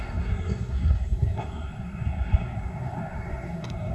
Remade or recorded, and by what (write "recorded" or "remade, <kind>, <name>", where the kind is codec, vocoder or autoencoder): remade, codec, SNAC